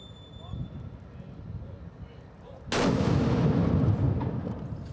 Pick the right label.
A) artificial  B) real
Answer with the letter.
B